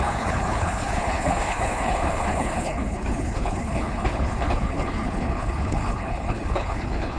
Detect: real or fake fake